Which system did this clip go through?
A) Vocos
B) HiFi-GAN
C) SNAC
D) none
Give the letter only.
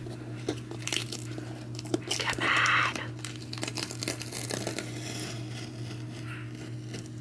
D